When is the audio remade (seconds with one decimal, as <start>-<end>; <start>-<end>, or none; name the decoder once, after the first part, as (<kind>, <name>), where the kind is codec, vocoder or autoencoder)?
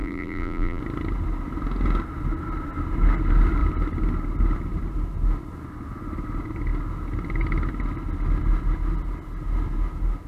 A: 0.0-0.8 (vocoder, BigVGAN v2)